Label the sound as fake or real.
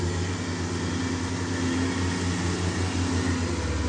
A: real